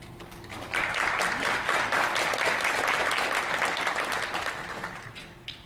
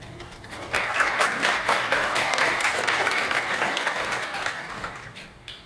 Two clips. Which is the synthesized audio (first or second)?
second